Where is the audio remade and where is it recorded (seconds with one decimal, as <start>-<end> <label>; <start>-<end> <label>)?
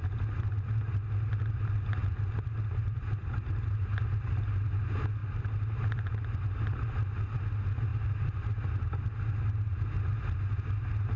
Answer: 0.0-11.2 recorded